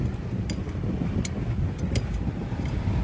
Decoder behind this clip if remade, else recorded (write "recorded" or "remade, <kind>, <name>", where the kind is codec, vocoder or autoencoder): recorded